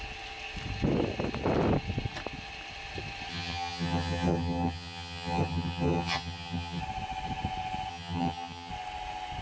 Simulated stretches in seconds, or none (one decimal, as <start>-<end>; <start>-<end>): 3.3-6.8; 7.9-8.7